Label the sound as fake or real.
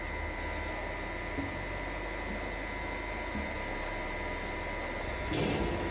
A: real